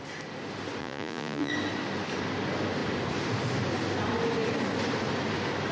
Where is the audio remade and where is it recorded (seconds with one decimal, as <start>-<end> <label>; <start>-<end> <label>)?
0.0-0.8 recorded; 0.8-1.5 remade; 1.5-5.7 recorded